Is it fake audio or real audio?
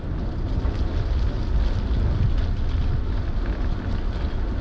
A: real